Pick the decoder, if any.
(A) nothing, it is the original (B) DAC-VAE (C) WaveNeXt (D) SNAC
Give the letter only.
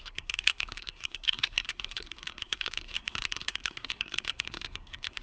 D